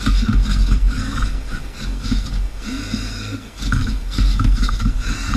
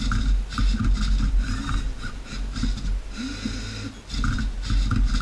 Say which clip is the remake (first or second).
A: first